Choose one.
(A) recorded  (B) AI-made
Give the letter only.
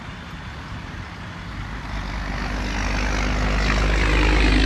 A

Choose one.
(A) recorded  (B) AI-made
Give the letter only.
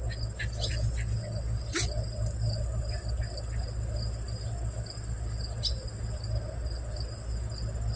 A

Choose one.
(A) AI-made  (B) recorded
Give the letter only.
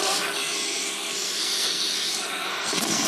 A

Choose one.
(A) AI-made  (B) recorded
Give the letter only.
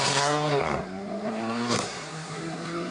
A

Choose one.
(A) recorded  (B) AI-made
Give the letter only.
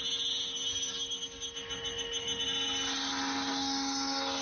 A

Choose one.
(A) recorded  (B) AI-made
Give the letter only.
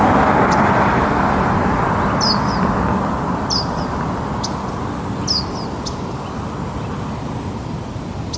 A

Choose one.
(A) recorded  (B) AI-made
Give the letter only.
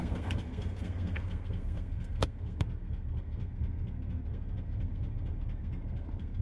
B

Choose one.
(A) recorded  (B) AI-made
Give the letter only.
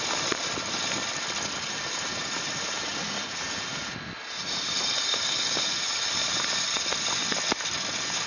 A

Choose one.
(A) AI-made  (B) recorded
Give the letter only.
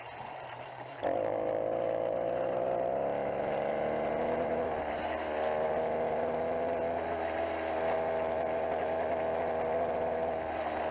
B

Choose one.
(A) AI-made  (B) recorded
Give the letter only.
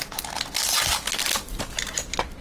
B